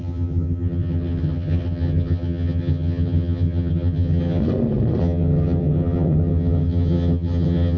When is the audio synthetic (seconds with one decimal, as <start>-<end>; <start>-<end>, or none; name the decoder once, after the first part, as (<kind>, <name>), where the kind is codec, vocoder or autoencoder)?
0.0-4.4 (vocoder, HiFi-GAN); 5.0-7.8